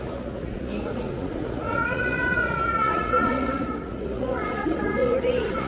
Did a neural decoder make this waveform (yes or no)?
yes